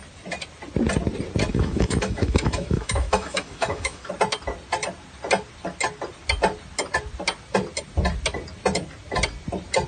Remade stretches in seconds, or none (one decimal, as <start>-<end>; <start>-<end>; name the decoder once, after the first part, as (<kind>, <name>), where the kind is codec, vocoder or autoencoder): 1.5-4.1 (autoencoder, DAC-VAE)